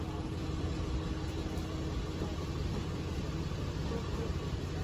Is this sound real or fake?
real